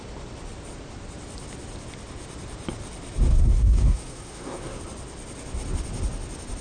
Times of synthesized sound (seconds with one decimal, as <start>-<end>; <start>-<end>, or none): 3.3-4.8